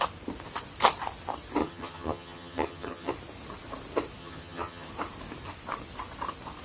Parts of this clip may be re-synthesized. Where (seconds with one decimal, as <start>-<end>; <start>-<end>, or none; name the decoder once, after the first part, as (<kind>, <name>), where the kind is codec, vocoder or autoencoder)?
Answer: 1.6-3.1 (vocoder, HiFi-GAN); 4.2-4.9